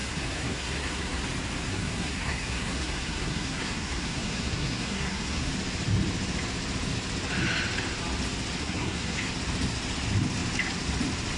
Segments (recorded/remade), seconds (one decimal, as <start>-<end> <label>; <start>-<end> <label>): 0.0-1.2 remade; 1.2-1.7 recorded; 1.7-5.5 remade; 5.5-8.6 recorded; 8.6-9.3 remade; 9.3-11.4 recorded